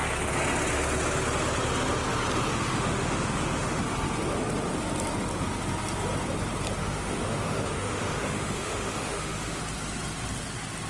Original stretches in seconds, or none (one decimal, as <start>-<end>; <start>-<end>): 0.0-2.5; 3.8-6.8; 9.6-10.9